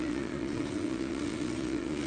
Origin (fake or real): fake